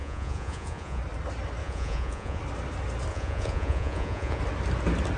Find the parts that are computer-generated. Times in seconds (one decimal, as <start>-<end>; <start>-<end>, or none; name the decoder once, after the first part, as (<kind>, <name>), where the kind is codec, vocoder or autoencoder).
0.0-1.0 (vocoder, Vocos); 1.6-2.4; 3.1-4.4